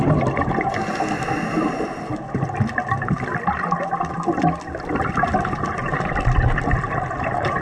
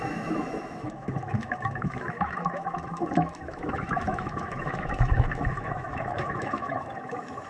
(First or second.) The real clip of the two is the first